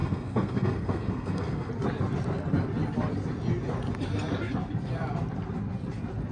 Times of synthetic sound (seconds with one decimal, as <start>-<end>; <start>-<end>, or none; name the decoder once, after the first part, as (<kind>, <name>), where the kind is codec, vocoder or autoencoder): 0.0-1.7 (codec, SNAC)